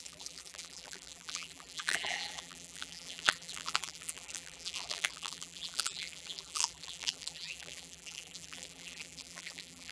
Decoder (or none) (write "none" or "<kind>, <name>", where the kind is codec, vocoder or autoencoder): vocoder, BigVGAN v2